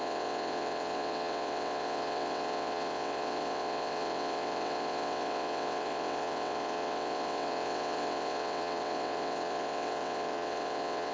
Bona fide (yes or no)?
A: no